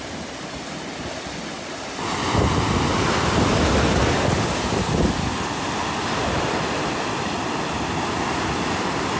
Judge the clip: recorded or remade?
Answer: recorded